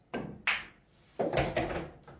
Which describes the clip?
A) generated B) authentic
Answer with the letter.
B